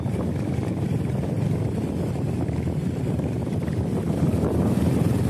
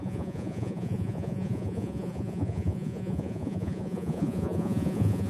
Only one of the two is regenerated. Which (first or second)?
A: second